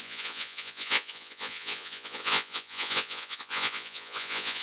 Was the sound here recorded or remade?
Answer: remade